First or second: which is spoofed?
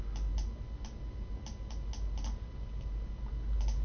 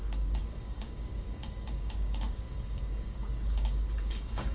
second